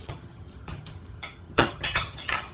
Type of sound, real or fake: fake